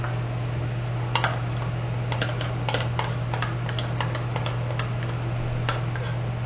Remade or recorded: recorded